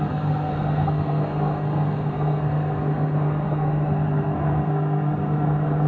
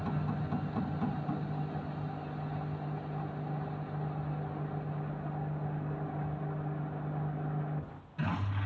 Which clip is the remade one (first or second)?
first